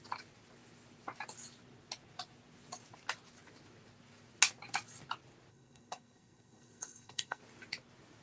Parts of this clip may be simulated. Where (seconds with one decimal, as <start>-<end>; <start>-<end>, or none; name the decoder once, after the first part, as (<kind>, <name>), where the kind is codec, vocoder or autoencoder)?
5.5-7.4 (codec, SNAC)